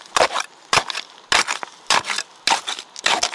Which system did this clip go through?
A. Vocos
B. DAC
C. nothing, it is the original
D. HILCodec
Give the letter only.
C